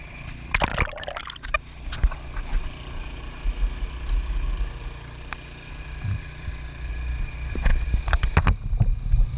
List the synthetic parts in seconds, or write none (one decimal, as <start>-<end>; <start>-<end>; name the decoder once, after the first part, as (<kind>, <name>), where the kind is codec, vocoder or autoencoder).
0.0-0.7 (vocoder, BigVGAN v2); 5.4-7.7; 8.4-9.4